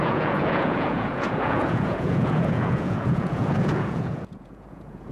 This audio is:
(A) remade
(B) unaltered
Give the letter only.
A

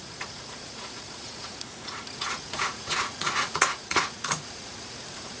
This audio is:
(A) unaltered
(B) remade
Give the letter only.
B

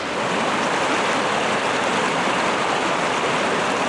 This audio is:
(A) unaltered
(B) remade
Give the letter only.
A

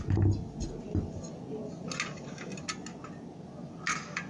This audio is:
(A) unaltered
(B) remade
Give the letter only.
A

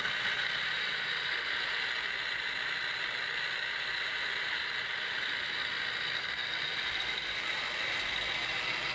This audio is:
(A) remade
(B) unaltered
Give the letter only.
B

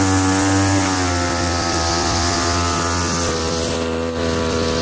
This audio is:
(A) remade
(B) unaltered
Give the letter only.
B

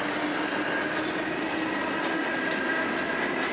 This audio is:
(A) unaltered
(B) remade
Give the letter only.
A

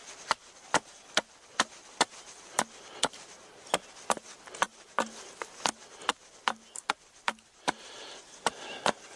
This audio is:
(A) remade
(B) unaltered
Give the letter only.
B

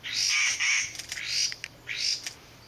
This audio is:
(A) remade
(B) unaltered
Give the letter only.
B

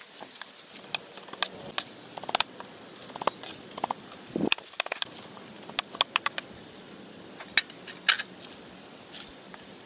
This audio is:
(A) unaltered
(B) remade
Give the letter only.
A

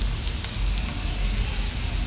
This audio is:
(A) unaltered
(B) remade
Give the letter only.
A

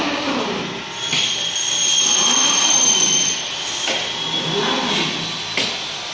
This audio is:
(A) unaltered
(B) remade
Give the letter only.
A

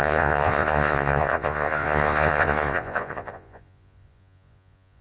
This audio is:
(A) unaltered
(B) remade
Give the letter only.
B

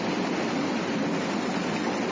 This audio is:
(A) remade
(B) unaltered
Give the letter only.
B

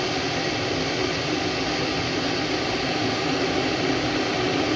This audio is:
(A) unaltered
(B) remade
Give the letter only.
A